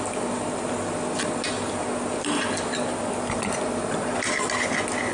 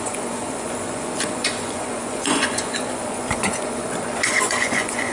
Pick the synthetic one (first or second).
second